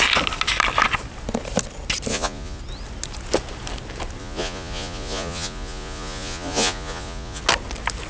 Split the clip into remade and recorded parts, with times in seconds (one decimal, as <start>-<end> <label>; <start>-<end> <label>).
0.0-2.1 recorded; 2.1-2.6 remade; 2.6-4.2 recorded; 4.2-7.4 remade; 7.4-8.1 recorded